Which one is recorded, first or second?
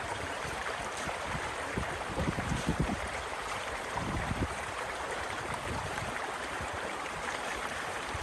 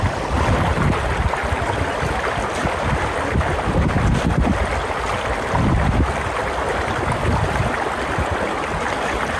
second